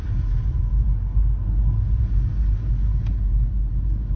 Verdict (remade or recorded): recorded